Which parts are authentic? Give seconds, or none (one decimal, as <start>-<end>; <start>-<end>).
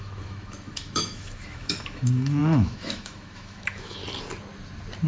4.0-5.1